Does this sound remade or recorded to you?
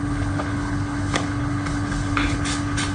remade